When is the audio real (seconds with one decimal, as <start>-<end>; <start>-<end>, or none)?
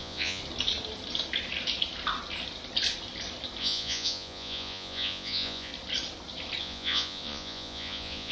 0.4-3.6; 5.7-6.6